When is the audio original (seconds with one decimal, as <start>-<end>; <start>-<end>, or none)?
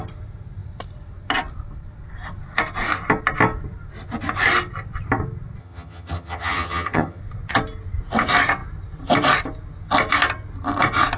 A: 0.0-5.6; 7.2-11.2